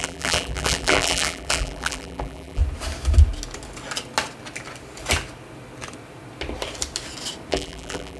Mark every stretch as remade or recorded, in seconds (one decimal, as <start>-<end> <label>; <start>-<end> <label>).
0.0-2.6 remade; 2.6-7.5 recorded; 7.5-8.2 remade